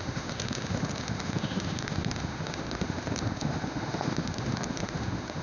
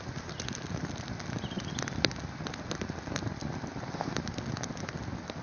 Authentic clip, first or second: second